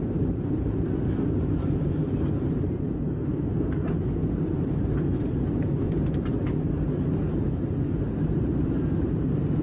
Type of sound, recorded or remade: remade